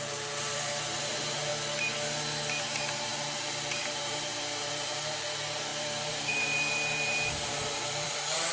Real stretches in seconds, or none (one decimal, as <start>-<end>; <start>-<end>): 1.5-2.6